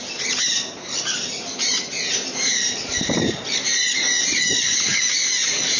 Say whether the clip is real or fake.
fake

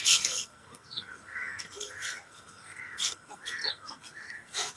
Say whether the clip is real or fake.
fake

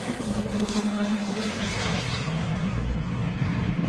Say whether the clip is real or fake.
fake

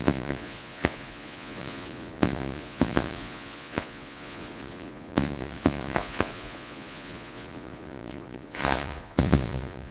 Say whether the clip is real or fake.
fake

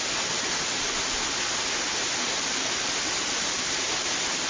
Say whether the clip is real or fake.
real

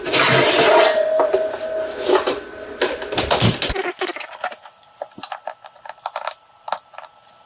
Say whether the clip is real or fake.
real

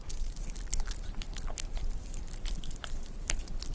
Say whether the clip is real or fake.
fake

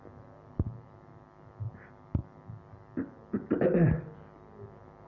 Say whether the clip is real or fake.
real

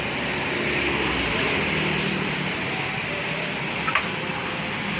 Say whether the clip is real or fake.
real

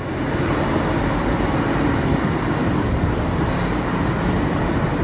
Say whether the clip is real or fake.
fake